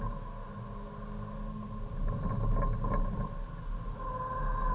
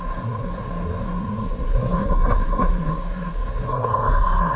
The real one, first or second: first